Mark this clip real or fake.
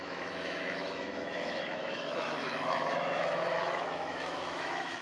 fake